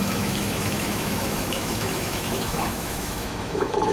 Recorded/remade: remade